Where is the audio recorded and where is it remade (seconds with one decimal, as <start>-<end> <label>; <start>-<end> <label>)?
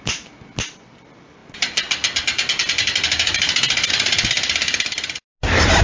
0.0-5.8 recorded